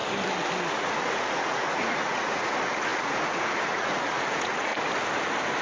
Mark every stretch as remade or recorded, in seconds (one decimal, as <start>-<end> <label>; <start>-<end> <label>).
0.0-0.7 recorded; 0.7-4.7 remade; 4.7-5.6 recorded